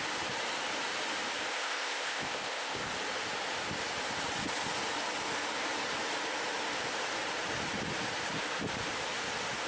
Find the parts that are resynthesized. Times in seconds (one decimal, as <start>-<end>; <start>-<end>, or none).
1.5-2.9